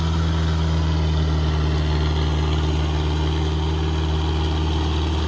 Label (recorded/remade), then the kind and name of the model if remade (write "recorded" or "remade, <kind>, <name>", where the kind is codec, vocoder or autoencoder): recorded